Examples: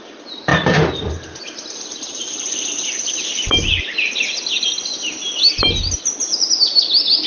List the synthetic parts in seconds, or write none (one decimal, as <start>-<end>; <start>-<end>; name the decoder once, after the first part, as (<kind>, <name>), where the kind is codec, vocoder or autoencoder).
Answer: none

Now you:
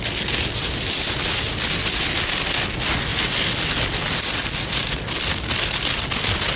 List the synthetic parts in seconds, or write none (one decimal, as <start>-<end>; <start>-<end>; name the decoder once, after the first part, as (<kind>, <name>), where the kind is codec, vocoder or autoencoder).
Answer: none

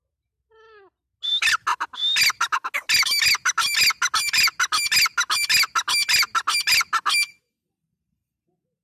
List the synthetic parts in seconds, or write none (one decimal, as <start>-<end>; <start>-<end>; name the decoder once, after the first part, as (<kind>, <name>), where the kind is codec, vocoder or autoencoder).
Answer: none